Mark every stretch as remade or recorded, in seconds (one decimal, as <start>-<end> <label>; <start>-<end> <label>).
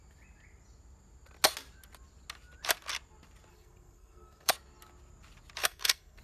0.0-3.5 recorded; 3.5-4.5 remade; 4.5-5.6 recorded; 5.6-6.2 remade